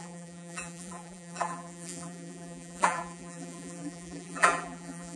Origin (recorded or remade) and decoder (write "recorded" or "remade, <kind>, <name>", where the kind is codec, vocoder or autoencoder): remade, vocoder, BigVGAN v2